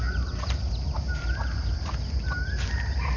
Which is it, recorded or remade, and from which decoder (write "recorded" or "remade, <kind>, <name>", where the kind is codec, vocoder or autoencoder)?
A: recorded